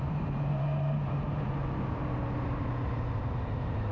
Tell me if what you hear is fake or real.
fake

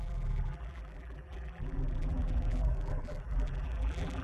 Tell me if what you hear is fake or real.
fake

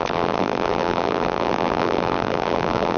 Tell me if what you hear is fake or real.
fake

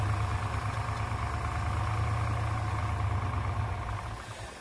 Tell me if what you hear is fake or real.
real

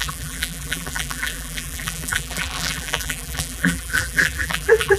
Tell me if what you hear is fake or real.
fake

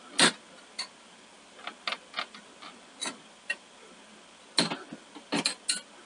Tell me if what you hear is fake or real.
real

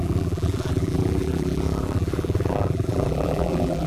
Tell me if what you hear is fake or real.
fake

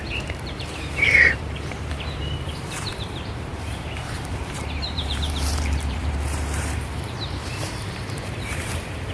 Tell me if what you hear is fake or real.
fake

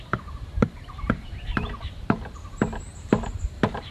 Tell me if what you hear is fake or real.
fake